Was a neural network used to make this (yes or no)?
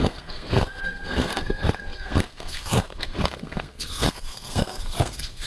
yes